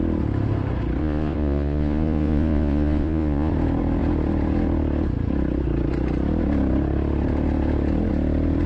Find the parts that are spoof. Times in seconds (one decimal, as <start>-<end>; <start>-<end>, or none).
1.0-3.5